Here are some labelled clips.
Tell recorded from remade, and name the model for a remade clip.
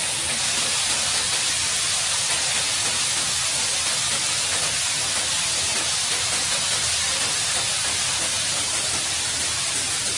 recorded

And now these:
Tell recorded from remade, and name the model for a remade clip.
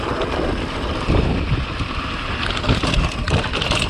recorded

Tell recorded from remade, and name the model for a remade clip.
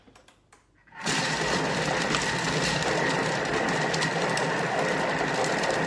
recorded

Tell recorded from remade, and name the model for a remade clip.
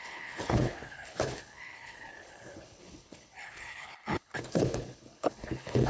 remade, codec, HILCodec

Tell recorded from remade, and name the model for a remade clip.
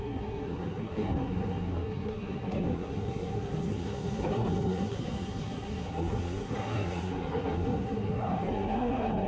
remade, codec, SNAC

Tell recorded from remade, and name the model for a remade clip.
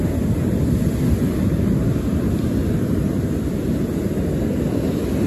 recorded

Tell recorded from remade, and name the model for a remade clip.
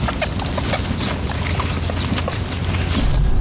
recorded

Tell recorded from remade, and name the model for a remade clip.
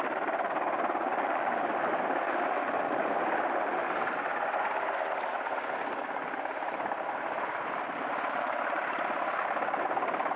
recorded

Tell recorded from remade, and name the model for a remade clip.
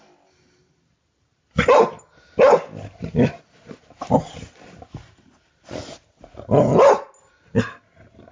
recorded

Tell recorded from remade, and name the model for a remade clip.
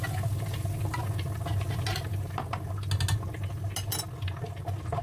recorded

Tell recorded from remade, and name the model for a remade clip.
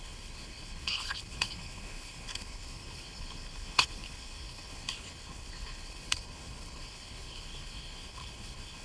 remade, codec, HILCodec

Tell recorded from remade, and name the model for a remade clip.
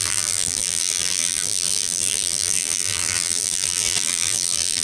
remade, vocoder, BigVGAN v2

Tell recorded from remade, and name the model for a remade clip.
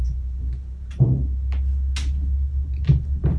recorded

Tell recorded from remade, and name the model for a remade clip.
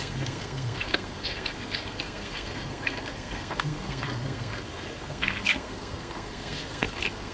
remade, codec, SNAC